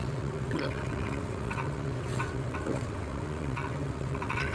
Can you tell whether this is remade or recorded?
remade